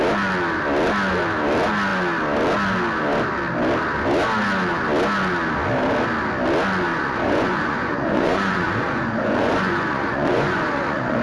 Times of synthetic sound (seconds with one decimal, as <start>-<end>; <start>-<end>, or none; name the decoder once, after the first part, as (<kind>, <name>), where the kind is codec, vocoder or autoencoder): 6.9-11.2 (vocoder, Vocos)